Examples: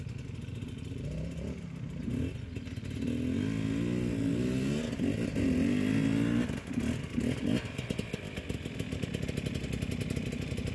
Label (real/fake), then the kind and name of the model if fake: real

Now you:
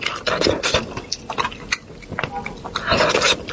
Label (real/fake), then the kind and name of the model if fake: real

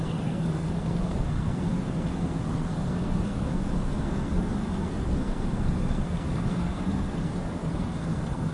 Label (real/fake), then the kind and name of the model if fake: fake, codec, SNAC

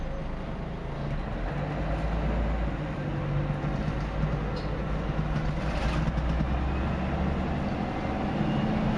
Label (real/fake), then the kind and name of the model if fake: real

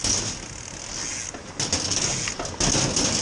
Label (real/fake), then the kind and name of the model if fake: real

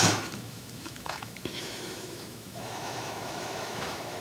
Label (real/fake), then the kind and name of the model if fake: fake, autoencoder, DAC-VAE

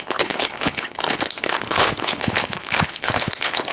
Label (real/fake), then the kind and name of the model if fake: fake, codec, HILCodec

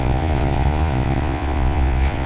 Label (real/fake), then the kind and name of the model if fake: fake, vocoder, Vocos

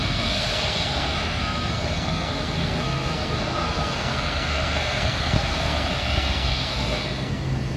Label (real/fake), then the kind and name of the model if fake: fake, codec, SNAC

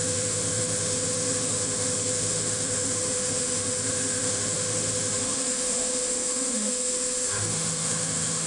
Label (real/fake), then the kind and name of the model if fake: fake, autoencoder, DAC-VAE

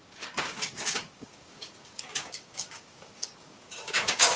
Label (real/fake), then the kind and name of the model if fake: fake, codec, DAC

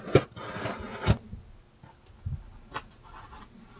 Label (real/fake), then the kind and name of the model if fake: real